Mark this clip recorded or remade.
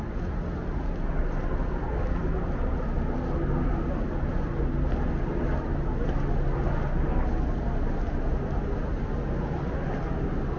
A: recorded